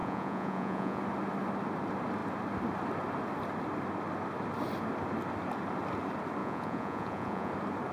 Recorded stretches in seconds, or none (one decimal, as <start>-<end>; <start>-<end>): 1.0-6.4; 7.5-7.9